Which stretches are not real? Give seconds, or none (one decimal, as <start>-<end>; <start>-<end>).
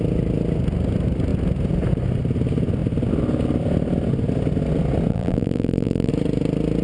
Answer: 5.1-6.1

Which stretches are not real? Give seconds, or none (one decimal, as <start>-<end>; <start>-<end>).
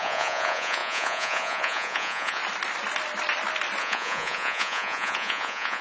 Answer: 0.0-2.4; 3.8-5.8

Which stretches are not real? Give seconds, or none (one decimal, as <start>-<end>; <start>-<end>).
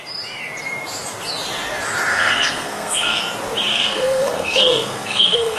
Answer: 2.1-3.2; 3.7-5.6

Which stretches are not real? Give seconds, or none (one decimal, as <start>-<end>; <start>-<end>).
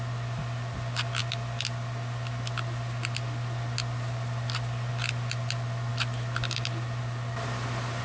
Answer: none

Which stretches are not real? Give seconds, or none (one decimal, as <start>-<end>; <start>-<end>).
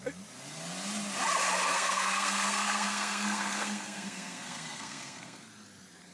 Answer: 1.7-5.4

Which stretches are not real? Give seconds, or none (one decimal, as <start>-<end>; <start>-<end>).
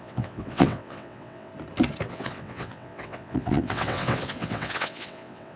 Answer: 0.0-1.5; 2.1-5.6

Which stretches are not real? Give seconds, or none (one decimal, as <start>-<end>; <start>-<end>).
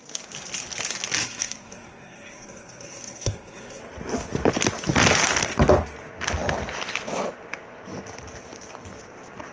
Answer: 1.2-3.8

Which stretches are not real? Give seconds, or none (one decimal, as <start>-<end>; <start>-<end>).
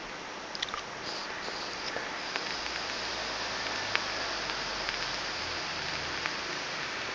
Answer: none